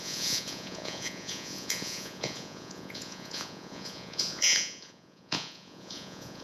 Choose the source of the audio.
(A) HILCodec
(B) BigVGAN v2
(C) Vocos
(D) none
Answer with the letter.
C